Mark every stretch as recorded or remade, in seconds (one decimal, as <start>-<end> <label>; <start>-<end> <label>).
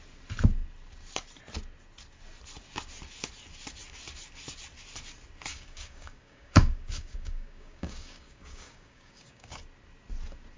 0.0-5.5 recorded; 5.5-9.6 remade; 9.6-10.6 recorded